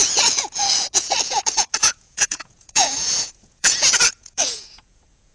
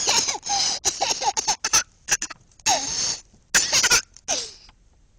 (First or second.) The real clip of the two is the second